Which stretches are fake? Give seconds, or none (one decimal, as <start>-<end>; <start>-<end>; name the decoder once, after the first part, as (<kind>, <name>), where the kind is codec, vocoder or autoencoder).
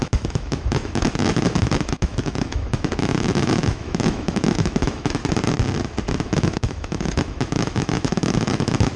0.0-5.2 (autoencoder, DAC-VAE); 6.2-9.0